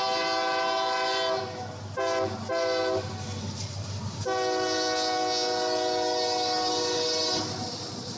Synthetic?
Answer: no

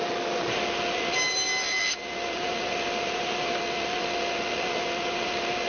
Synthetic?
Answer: no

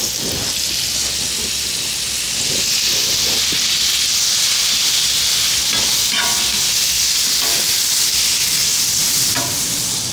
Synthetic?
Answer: no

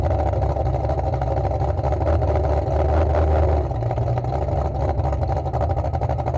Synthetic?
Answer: no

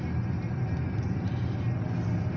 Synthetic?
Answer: no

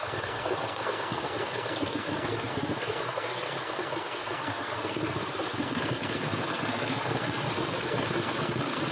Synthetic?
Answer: yes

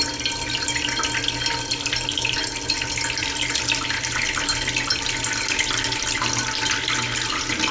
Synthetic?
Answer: no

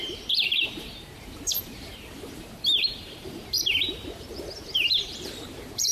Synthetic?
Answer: yes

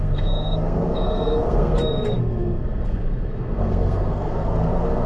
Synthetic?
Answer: yes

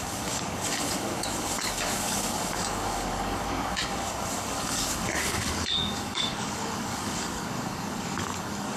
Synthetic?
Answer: yes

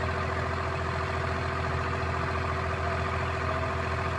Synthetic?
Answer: no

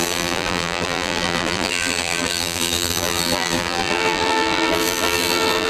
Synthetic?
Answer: yes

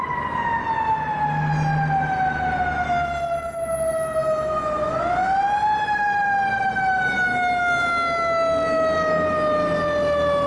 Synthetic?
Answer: no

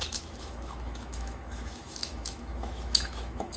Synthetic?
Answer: yes